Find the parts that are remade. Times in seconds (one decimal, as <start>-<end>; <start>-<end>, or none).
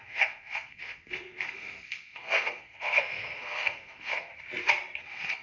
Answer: 0.0-4.3; 5.0-5.4